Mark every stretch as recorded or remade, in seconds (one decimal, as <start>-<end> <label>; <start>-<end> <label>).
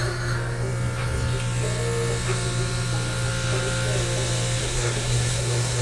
0.0-4.6 recorded; 4.6-5.8 remade